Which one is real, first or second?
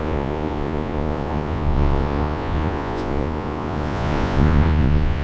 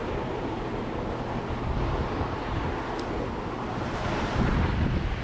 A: second